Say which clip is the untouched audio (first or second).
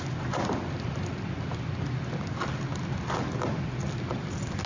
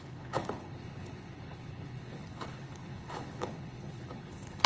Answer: first